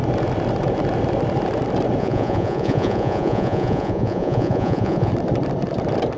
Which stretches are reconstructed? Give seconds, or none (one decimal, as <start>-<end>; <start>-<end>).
2.0-5.1